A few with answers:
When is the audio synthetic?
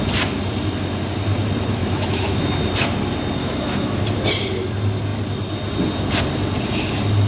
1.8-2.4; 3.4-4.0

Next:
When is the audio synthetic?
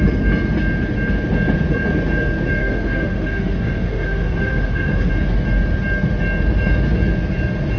2.6-5.1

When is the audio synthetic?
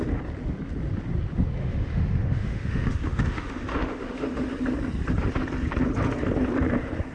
1.6-4.5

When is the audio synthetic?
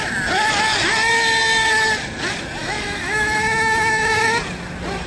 2.6-4.2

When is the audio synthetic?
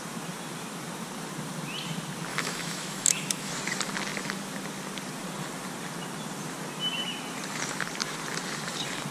2.3-3.5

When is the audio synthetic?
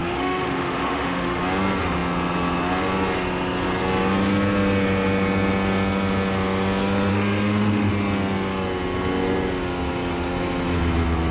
0.0-1.4; 7.1-7.9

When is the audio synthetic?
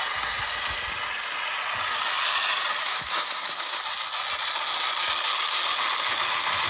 2.8-3.8